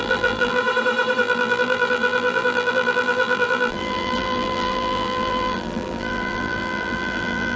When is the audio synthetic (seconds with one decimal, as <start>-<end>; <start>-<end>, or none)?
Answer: 0.0-0.6; 1.2-7.6